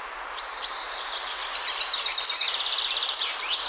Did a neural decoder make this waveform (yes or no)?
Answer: no